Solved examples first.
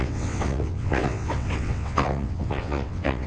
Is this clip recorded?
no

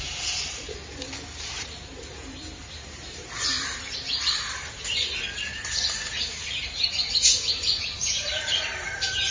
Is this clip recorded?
no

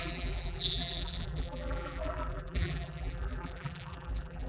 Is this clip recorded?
no